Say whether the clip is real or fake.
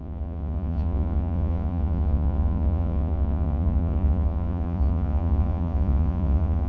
fake